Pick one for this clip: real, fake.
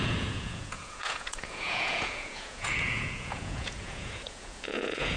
fake